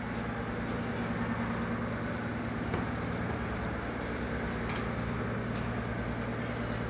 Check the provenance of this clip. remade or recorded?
recorded